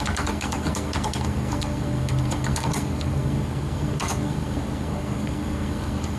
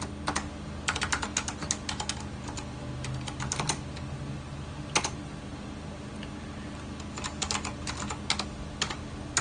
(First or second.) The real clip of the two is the second